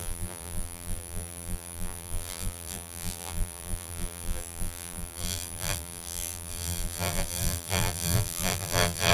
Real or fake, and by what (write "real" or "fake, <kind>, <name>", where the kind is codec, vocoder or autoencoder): fake, vocoder, BigVGAN v2